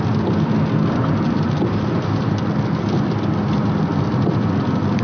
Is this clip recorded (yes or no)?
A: yes